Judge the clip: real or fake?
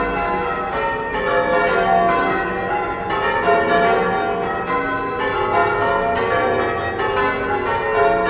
real